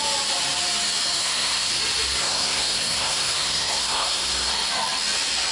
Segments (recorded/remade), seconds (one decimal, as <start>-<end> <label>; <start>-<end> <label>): 0.0-1.2 recorded; 1.2-1.7 remade; 1.7-2.2 recorded; 2.2-4.5 remade; 4.5-5.5 recorded